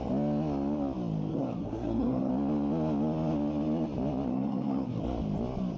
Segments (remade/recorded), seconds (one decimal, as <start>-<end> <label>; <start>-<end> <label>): 0.0-1.3 recorded; 1.3-2.3 remade; 2.3-4.3 recorded; 4.3-5.0 remade; 5.0-5.8 recorded

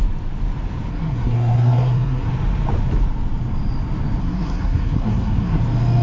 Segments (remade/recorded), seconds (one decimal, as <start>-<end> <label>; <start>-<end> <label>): 0.0-0.9 recorded; 0.9-2.3 remade; 2.3-4.2 recorded; 4.2-5.6 remade; 5.6-6.0 recorded

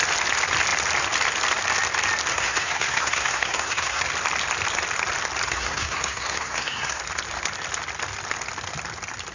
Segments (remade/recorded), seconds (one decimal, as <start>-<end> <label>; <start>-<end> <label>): 0.0-2.3 recorded; 2.3-4.0 remade; 4.0-5.5 recorded; 5.5-7.0 remade; 7.0-9.3 recorded

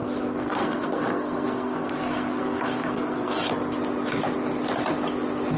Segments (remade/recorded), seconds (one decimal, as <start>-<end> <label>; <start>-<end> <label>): 0.0-3.4 remade; 3.4-5.6 recorded